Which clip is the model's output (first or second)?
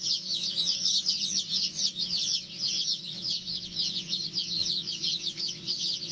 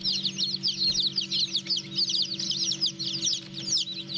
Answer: first